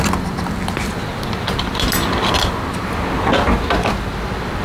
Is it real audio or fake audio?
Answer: real